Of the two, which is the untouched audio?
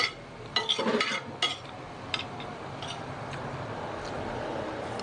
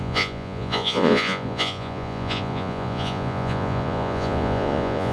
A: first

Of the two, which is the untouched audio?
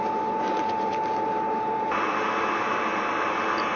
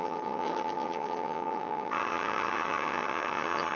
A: first